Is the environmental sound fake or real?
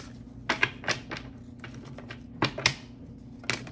real